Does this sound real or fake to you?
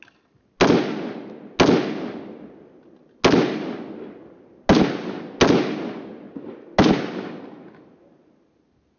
real